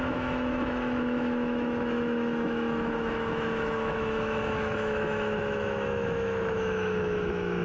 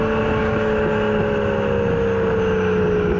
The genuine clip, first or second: second